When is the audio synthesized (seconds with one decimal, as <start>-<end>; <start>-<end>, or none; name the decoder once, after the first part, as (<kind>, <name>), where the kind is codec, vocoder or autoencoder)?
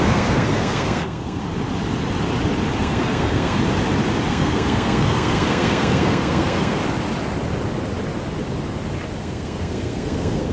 0.0-1.4 (codec, SNAC); 2.8-3.6; 4.3-6.8; 9.2-10.5